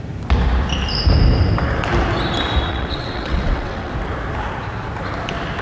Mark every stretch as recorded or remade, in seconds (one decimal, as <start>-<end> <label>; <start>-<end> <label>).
0.0-2.7 recorded; 2.7-3.9 remade; 3.9-5.6 recorded